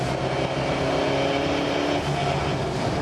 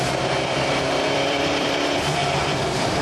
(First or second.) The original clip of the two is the first